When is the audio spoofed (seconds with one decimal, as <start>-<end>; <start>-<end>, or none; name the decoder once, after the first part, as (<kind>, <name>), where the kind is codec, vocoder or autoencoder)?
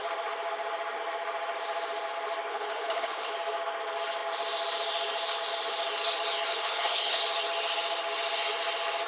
2.5-3.3 (codec, HILCodec); 6.5-7.2